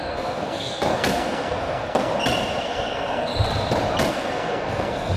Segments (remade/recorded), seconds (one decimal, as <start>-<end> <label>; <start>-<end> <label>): 0.0-2.1 remade; 2.1-2.6 recorded; 2.6-3.3 remade; 3.3-4.1 recorded; 4.1-5.2 remade